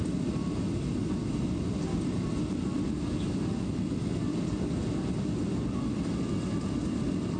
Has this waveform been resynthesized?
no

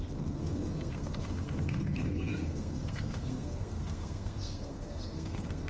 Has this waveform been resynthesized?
yes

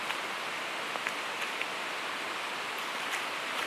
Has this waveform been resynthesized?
no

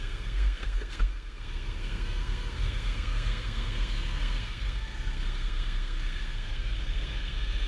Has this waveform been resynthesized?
yes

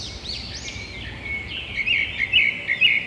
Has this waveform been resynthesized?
no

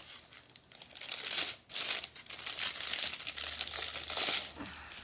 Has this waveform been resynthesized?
no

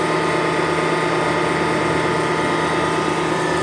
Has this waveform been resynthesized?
no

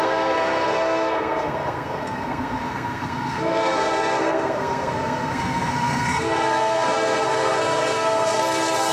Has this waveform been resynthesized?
yes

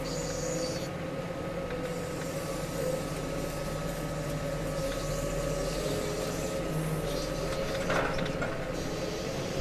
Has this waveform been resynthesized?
no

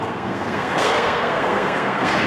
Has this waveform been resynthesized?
yes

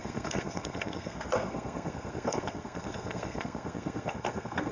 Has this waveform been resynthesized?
yes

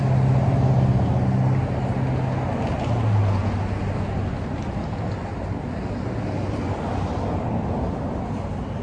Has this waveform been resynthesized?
no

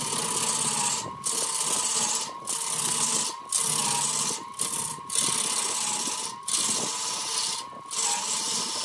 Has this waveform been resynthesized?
no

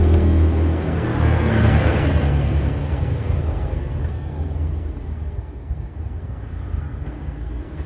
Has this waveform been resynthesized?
yes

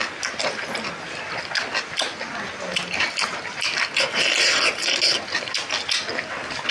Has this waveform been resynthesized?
no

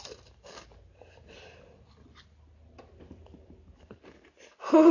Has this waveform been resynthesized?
no